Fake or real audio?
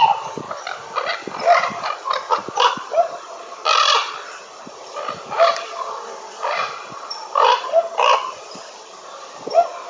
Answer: real